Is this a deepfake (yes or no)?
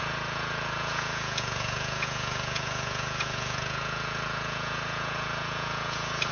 yes